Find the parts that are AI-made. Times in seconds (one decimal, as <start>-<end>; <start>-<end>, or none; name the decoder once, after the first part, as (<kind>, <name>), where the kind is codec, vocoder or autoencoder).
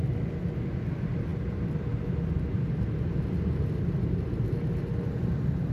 none